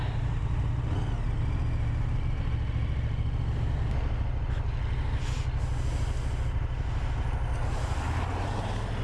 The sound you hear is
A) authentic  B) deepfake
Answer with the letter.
A